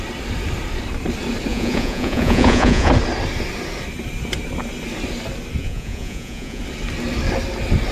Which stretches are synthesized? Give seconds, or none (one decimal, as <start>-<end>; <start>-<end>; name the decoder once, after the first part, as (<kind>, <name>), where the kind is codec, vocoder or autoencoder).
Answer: 1.5-2.9 (vocoder, Vocos); 5.6-6.6

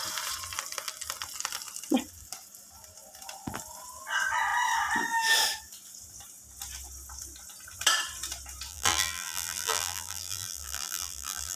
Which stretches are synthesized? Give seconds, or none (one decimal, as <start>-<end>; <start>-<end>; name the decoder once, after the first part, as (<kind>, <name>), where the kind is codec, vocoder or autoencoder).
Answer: 8.7-11.6 (vocoder, BigVGAN v2)